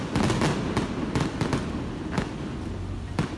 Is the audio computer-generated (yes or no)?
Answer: no